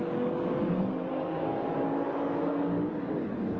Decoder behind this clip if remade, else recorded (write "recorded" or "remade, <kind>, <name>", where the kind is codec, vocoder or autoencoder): remade, codec, DAC